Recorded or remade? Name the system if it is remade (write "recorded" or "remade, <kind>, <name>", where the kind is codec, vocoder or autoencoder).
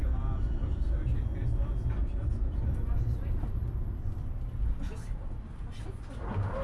recorded